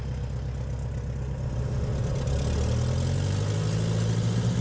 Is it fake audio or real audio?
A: real